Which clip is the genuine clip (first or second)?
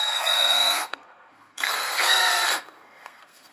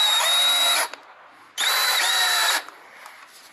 second